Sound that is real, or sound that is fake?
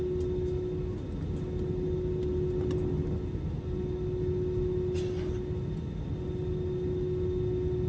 real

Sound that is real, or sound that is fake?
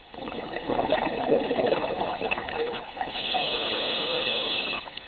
fake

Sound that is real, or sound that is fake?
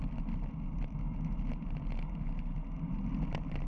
real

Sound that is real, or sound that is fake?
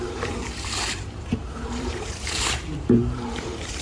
fake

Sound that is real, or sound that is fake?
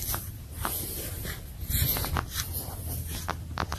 real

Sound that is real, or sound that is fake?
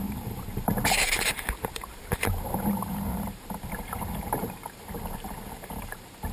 fake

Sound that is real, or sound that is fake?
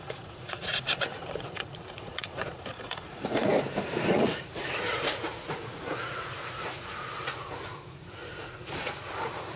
fake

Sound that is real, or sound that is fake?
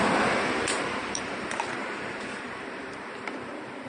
fake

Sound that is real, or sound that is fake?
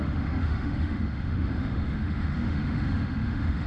fake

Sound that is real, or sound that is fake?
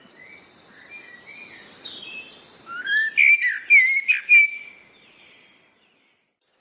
real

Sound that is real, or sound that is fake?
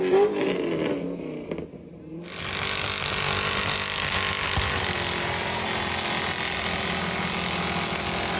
real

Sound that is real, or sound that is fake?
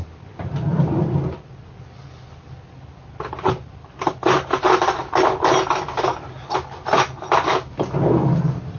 real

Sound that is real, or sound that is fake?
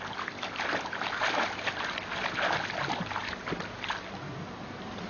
real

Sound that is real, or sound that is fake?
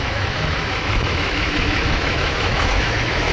fake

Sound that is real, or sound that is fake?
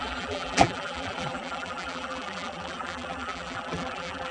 fake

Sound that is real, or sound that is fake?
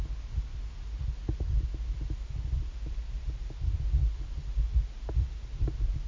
real